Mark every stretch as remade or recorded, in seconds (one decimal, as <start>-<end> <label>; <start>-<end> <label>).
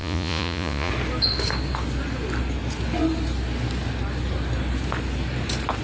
0.0-0.9 remade; 0.9-5.8 recorded